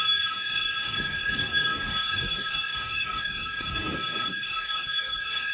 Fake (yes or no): yes